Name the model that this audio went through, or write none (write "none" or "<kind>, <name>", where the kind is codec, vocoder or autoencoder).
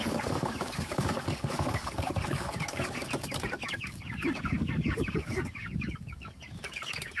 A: codec, DAC